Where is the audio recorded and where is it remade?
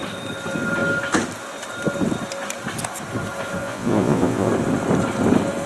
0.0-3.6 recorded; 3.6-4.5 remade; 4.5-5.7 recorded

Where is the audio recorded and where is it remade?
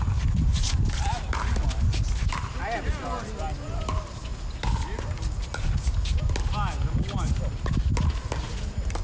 0.0-9.0 recorded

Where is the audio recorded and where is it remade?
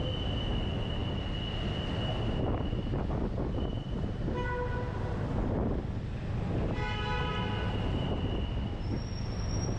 0.0-9.8 recorded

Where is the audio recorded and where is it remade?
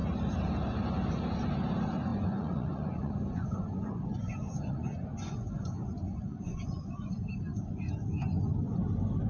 0.0-2.1 recorded; 2.1-7.1 remade; 7.1-9.3 recorded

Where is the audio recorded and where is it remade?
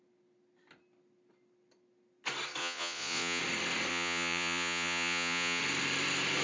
0.0-2.6 recorded; 2.6-3.4 remade; 3.4-3.9 recorded; 3.9-5.6 remade; 5.6-6.4 recorded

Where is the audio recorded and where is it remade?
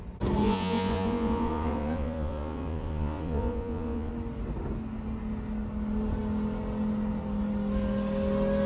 0.0-0.4 recorded; 0.4-4.1 remade; 4.1-8.7 recorded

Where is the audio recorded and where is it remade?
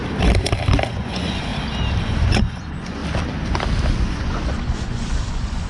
0.0-0.9 recorded; 0.9-1.5 remade; 1.5-2.0 recorded; 2.0-3.0 remade; 3.0-3.9 recorded; 3.9-5.7 remade